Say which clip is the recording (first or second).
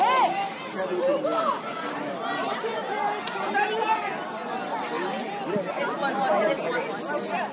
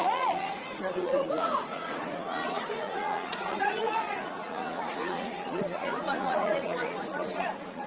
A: first